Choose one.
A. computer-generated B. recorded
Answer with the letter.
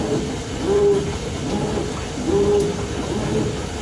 B